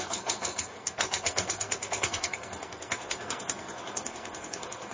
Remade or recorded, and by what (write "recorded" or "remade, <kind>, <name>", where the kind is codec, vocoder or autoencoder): remade, codec, SNAC